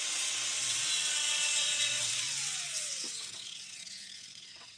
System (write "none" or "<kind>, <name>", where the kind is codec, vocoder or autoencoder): vocoder, WaveNeXt